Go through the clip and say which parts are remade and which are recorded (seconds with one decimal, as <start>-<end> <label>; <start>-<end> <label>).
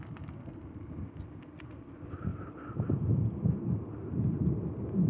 0.0-5.1 recorded